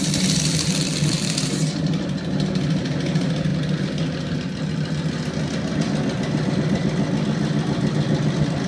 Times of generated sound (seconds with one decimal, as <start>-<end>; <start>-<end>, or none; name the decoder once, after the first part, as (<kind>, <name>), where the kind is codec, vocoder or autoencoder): none